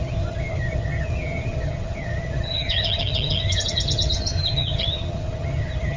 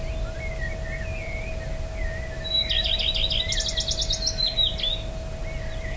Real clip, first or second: second